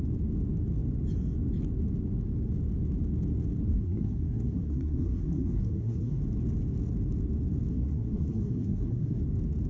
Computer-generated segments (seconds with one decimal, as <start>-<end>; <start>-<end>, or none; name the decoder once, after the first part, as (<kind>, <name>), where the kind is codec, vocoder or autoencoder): 3.7-6.2 (codec, SNAC); 7.7-9.2